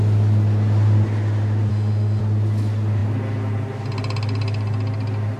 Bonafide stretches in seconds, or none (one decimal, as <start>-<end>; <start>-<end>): 0.0-1.7; 2.2-5.4